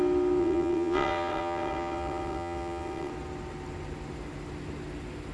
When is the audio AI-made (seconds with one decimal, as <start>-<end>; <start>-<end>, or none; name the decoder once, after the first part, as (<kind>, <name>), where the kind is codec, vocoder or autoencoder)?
0.4-3.1 (vocoder, WaveNeXt)